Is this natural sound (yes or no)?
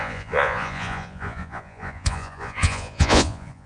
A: no